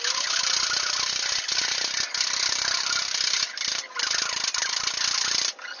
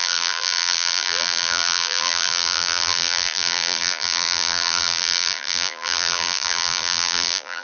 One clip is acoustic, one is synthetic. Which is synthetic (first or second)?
second